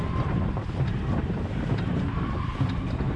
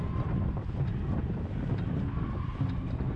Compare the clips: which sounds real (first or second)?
second